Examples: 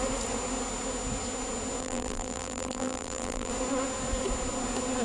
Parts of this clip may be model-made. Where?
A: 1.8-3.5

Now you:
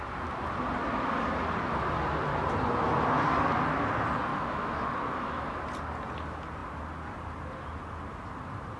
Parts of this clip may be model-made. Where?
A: 4.3-5.6

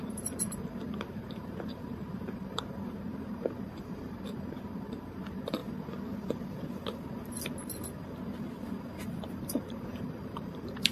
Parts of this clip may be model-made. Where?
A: 0.0-5.6; 9.2-10.9

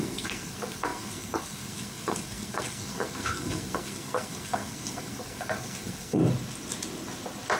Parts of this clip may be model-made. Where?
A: 0.0-6.2

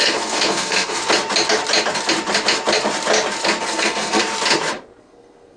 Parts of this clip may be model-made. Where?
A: 0.0-1.0; 3.6-4.2; 5.0-5.6

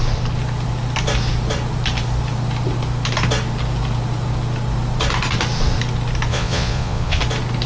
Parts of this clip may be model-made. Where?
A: 6.3-7.2